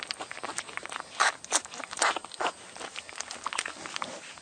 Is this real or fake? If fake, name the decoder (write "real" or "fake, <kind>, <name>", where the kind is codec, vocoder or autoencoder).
real